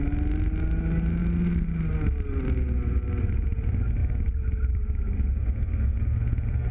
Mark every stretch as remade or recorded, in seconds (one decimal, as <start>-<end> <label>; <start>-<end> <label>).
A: 0.0-6.7 recorded